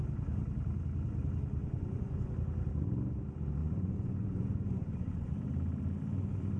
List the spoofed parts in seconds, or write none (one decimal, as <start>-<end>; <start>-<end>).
1.6-2.3; 3.6-5.3